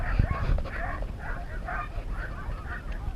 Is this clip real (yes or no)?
yes